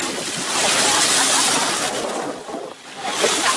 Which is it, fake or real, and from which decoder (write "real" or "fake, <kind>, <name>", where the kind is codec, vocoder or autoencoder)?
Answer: real